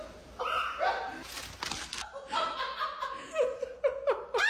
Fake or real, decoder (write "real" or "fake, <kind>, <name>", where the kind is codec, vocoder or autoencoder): real